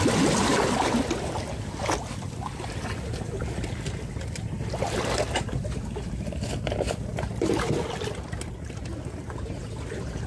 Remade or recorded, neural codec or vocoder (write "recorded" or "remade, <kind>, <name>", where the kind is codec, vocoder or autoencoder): recorded